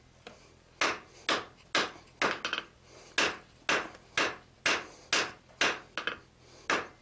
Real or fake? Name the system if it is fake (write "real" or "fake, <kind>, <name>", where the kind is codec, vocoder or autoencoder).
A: real